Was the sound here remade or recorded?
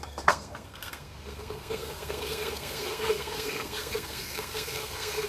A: remade